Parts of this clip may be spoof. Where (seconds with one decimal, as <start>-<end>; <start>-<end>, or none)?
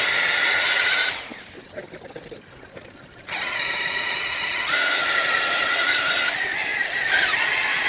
none